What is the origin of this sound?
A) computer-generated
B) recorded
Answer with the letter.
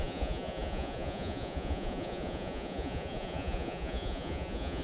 A